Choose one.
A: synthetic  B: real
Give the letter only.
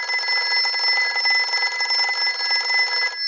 B